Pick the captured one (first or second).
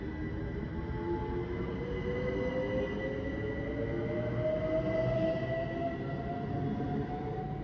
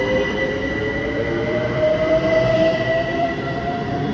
first